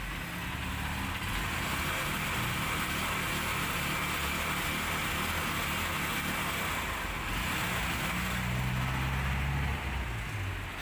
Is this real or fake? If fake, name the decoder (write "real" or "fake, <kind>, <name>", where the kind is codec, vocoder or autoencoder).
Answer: real